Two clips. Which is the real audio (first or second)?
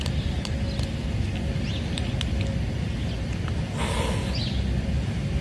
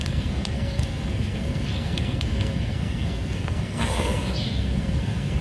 first